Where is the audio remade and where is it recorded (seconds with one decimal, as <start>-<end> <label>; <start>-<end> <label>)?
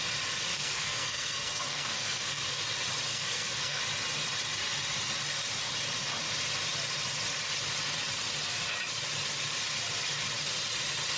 0.0-0.5 recorded; 0.5-2.6 remade; 2.6-3.1 recorded; 3.1-3.8 remade; 3.8-11.2 recorded